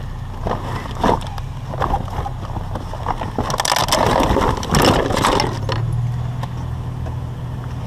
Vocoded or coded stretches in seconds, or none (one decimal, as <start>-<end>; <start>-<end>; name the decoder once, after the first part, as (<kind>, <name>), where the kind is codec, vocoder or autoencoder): none